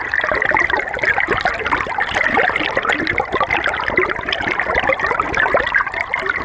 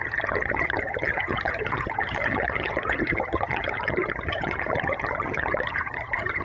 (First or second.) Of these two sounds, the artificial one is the second